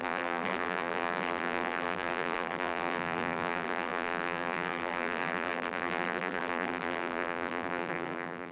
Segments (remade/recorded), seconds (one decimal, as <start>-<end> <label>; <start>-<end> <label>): 0.0-8.5 remade